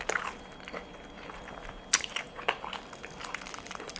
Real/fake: real